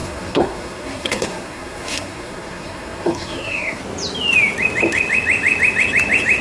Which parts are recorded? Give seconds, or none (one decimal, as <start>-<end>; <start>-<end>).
3.8-6.4